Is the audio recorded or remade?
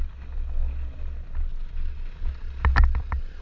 recorded